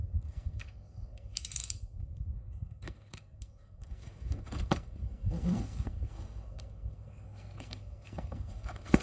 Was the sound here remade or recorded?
remade